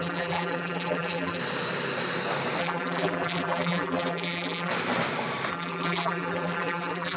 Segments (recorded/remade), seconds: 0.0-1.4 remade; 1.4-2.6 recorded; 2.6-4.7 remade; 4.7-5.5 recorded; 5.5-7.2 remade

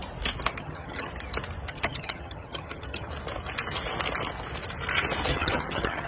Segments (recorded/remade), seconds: 0.0-0.5 recorded; 0.5-1.1 remade; 1.1-1.7 recorded; 1.7-3.1 remade; 3.1-5.3 recorded; 5.3-6.1 remade